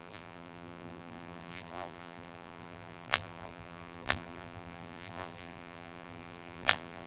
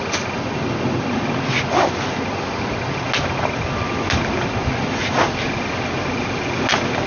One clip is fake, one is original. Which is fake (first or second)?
first